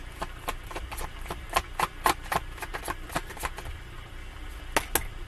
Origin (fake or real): real